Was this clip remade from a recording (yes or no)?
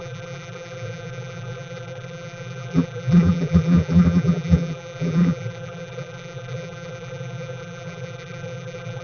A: yes